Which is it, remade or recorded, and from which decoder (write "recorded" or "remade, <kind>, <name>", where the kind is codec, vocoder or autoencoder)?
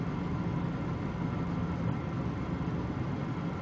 recorded